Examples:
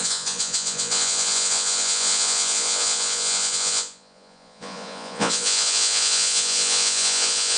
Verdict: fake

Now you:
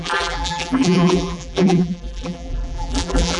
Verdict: fake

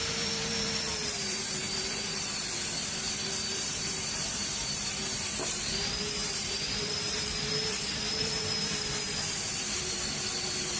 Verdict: fake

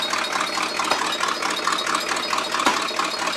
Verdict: real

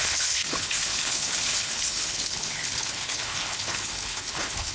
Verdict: fake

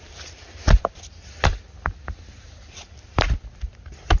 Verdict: real